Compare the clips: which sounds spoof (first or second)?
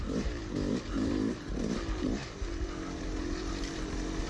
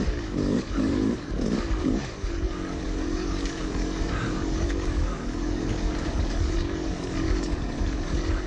second